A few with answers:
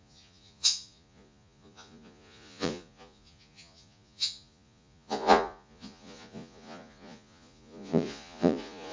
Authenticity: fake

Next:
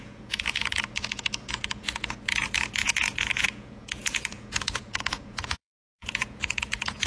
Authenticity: fake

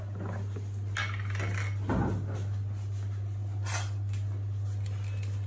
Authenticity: real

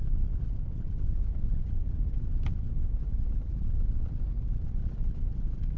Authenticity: real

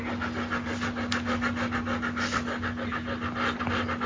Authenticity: real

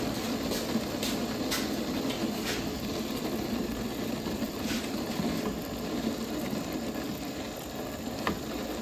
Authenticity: real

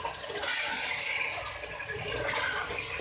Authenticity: real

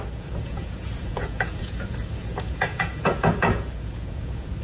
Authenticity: fake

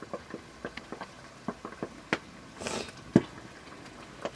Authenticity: real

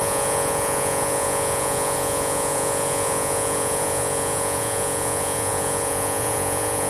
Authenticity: fake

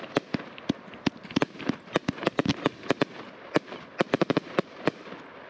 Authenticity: real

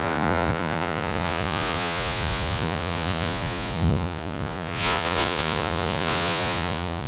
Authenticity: fake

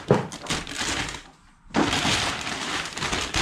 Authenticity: real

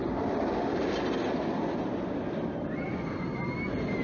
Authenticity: real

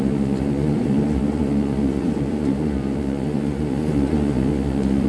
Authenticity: fake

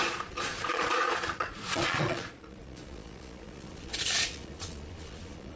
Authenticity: fake